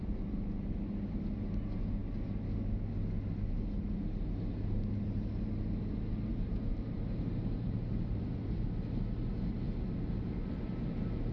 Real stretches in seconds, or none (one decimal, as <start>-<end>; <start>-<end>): 0.0-6.3; 8.7-11.3